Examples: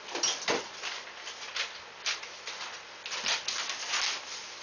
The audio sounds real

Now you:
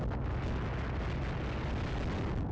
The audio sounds real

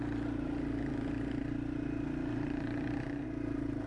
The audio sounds real